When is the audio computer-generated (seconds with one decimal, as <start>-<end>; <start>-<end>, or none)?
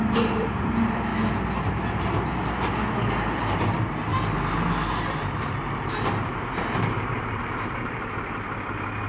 0.0-1.1; 3.1-9.1